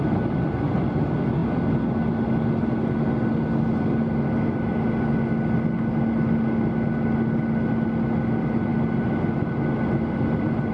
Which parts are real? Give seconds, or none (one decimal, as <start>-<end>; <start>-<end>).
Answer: 0.0-10.7